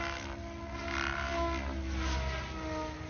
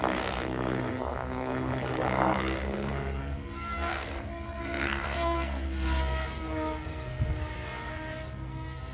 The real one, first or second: first